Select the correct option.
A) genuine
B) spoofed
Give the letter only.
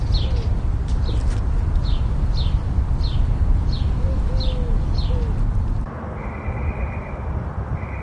A